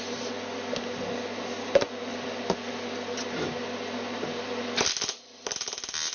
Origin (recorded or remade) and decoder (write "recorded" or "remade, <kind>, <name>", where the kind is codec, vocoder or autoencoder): recorded